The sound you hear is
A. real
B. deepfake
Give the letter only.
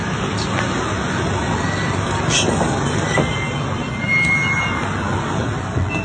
A